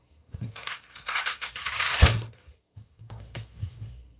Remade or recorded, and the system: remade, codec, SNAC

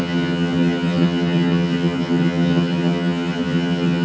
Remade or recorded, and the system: remade, vocoder, HiFi-GAN